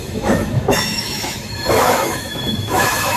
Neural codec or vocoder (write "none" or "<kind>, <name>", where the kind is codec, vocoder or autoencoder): autoencoder, DAC-VAE